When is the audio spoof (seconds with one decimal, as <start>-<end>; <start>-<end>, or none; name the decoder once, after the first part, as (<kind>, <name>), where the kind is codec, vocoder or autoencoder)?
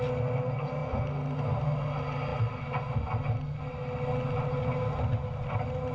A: none